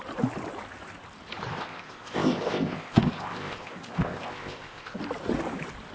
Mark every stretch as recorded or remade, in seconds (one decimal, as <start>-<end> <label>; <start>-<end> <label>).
0.0-1.5 recorded; 1.5-5.0 remade; 5.0-5.9 recorded